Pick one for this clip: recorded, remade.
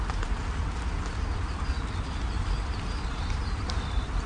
recorded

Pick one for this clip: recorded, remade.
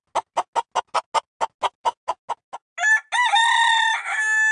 recorded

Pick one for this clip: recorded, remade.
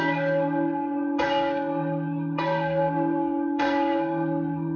remade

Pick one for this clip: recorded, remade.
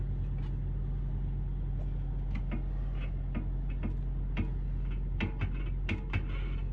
recorded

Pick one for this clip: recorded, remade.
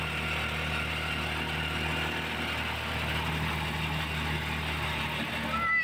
recorded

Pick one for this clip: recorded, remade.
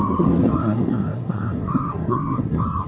remade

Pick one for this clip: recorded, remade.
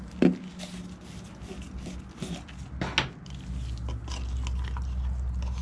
recorded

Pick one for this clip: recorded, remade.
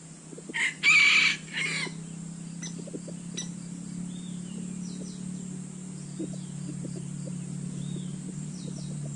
recorded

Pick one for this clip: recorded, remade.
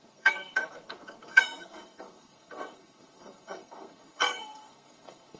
remade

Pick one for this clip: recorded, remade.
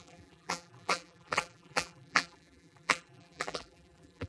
remade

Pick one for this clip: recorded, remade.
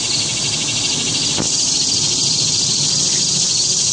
recorded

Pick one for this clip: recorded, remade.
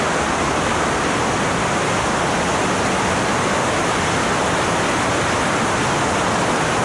recorded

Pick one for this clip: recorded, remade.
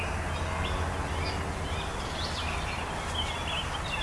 recorded